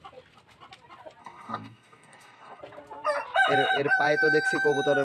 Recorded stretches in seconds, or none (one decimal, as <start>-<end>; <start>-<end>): 0.0-1.2; 2.6-5.0